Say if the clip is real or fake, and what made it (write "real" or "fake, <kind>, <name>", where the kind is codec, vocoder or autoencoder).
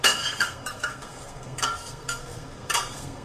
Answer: fake, codec, SNAC